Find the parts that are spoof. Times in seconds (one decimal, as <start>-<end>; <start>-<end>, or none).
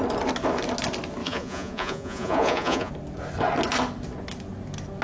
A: 1.2-2.9